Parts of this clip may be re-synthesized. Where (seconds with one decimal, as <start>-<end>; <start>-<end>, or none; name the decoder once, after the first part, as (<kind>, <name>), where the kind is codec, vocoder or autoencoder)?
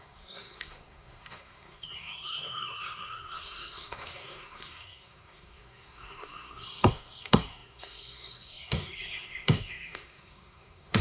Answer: 0.0-11.0 (codec, SNAC)